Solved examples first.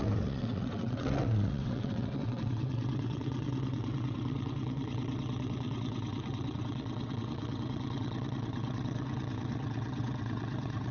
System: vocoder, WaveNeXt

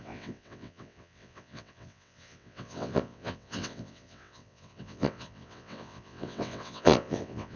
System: vocoder, WaveNeXt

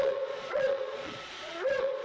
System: vocoder, Vocos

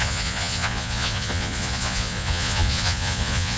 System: vocoder, Vocos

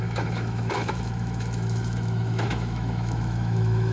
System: autoencoder, DAC-VAE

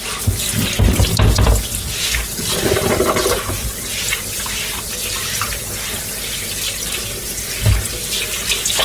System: none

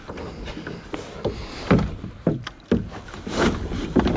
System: none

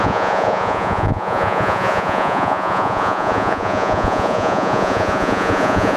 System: vocoder, Vocos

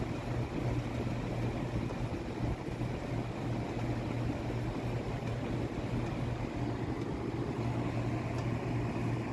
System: none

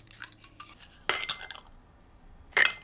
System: none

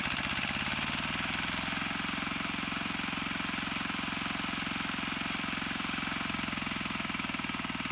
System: vocoder, BigVGAN v2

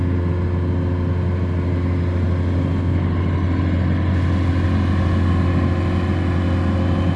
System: none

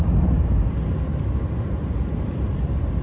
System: none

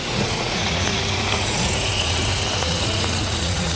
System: vocoder, Vocos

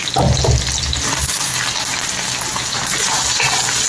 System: none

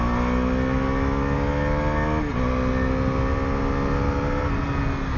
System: none